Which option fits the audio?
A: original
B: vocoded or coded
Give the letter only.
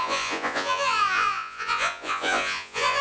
B